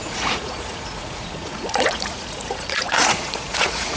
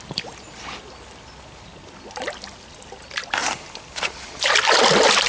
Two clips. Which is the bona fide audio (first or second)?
second